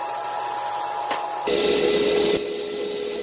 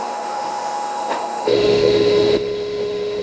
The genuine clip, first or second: first